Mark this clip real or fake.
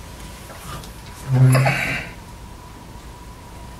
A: real